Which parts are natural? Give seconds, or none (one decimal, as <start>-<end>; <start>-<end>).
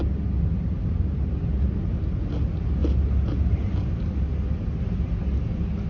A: 0.0-5.9